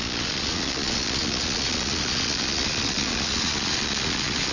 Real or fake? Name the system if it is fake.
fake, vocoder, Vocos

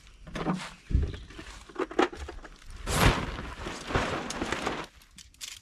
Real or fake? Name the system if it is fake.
real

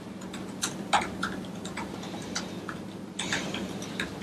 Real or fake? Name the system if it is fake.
real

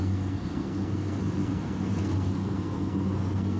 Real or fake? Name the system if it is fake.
fake, codec, SNAC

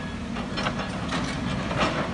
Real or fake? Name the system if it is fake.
real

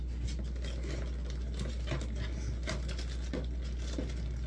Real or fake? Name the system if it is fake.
real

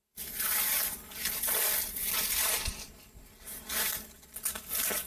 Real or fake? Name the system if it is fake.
real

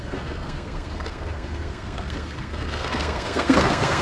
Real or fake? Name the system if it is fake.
fake, codec, SNAC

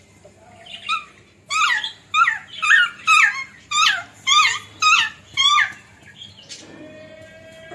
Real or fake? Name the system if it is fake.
real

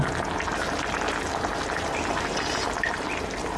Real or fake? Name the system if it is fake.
real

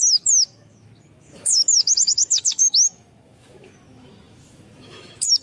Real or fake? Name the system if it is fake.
fake, autoencoder, DAC-VAE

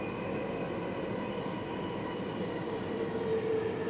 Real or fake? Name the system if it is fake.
real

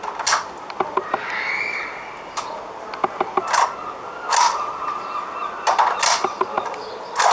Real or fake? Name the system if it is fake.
real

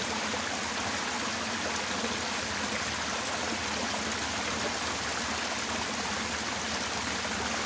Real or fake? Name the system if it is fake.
real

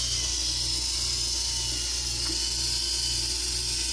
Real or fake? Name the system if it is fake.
real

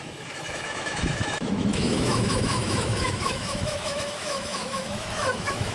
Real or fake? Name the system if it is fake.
fake, autoencoder, DAC-VAE